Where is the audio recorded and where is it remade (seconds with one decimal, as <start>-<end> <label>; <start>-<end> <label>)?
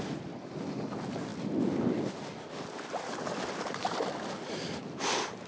0.0-5.5 recorded